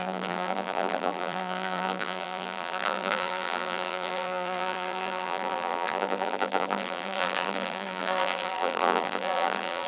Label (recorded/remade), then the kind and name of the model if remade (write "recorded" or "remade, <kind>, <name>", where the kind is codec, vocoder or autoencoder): remade, vocoder, BigVGAN v2